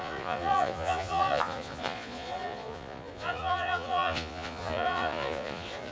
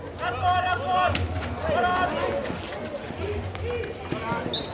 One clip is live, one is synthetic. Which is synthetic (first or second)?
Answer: first